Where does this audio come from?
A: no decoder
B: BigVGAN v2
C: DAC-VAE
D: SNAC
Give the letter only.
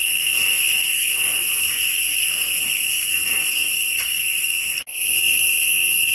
D